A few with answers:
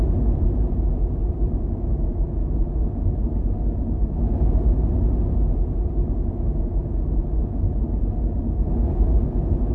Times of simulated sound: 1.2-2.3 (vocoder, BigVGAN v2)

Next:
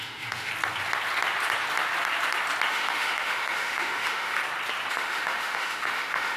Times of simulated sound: 0.0-0.5 (autoencoder, DAC-VAE); 2.7-4.4; 4.9-6.4

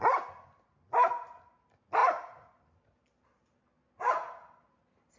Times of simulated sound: none

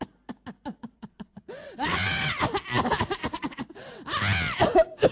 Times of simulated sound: 0.7-2.4 (vocoder, WaveNeXt); 3.2-4.0

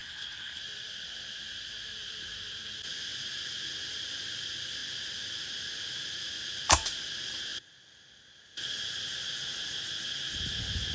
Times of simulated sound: 0.0-0.6 (codec, HILCodec)

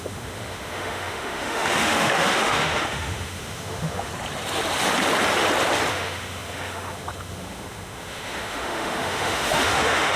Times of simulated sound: 0.0-4.1 (autoencoder, DAC-VAE); 5.9-10.2